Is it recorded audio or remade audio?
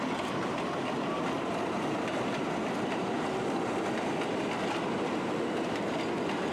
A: recorded